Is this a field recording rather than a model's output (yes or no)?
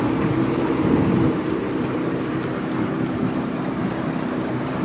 no